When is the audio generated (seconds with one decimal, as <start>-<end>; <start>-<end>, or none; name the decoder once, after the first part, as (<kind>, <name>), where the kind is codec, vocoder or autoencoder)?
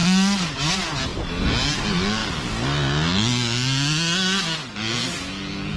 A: 0.0-0.7 (vocoder, Vocos)